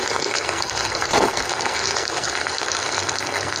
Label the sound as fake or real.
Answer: fake